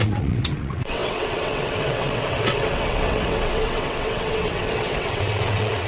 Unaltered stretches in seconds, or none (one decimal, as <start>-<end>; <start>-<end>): none